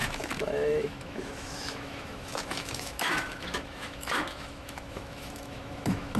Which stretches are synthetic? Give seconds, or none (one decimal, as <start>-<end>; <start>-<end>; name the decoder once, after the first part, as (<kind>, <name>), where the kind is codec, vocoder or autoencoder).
0.0-6.2 (autoencoder, DAC-VAE)